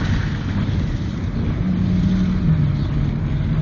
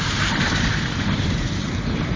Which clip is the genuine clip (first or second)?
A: first